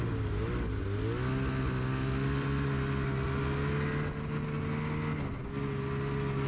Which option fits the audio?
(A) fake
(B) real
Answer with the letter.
B